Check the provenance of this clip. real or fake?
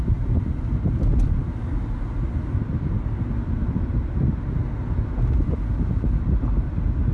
real